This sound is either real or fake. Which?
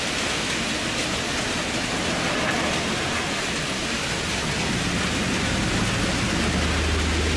real